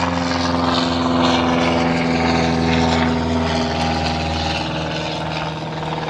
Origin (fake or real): real